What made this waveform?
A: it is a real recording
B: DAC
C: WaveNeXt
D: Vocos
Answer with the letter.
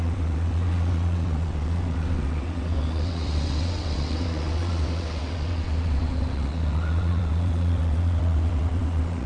C